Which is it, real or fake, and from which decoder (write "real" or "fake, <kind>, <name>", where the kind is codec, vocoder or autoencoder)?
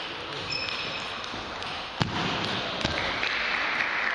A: real